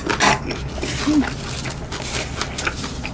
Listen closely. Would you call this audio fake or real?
real